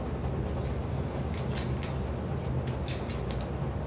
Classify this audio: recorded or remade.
recorded